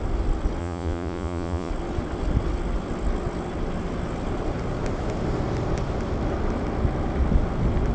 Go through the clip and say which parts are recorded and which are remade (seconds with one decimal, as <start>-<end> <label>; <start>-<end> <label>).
0.0-0.6 recorded; 0.6-1.7 remade; 1.7-7.9 recorded